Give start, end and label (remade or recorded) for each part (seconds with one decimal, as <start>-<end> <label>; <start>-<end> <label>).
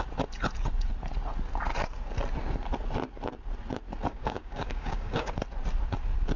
0.0-4.1 recorded; 4.1-5.3 remade; 5.3-6.4 recorded